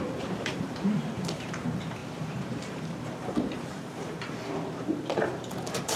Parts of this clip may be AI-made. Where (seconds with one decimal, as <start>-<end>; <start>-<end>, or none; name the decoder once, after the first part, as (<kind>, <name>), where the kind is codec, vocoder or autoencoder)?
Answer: 0.0-6.0 (vocoder, BigVGAN v2)